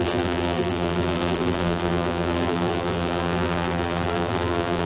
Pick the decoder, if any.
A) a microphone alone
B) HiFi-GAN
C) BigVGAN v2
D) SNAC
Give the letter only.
C